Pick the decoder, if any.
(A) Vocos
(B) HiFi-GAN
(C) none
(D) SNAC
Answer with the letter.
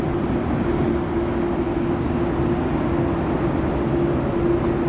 C